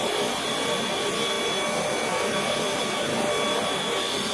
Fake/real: real